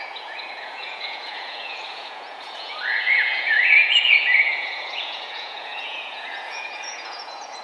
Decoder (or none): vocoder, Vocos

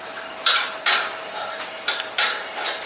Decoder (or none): vocoder, BigVGAN v2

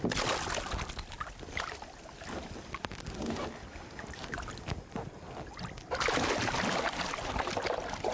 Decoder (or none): none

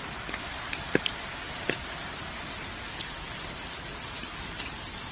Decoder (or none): none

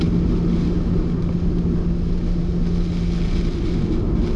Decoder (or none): none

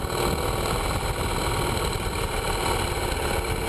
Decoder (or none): none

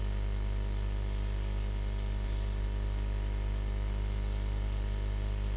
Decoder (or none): none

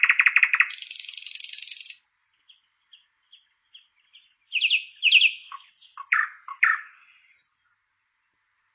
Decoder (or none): vocoder, BigVGAN v2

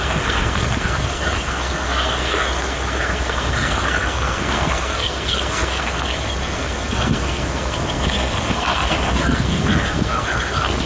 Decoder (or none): codec, SNAC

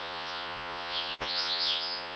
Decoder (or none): vocoder, Vocos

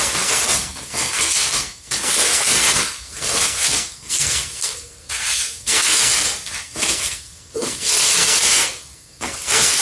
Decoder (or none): codec, SNAC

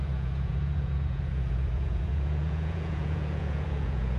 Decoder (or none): vocoder, Vocos